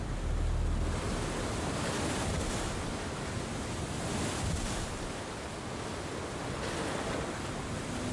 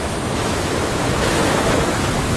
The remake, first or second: second